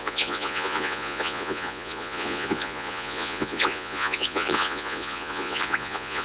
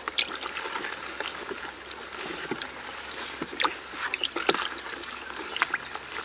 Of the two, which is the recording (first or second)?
second